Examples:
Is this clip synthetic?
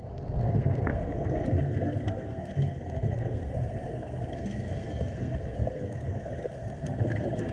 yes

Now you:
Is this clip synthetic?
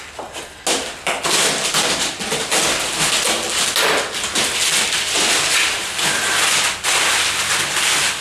no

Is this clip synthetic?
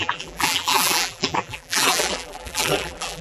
yes